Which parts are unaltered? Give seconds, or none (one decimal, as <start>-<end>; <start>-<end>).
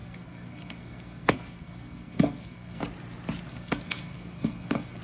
2.8-3.5